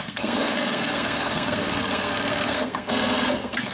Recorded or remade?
remade